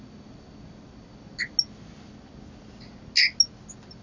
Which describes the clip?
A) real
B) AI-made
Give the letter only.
A